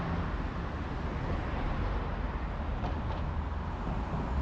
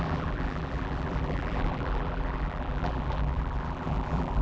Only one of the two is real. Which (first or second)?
first